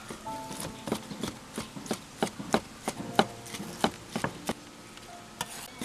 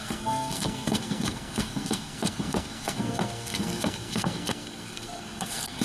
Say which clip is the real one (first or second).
first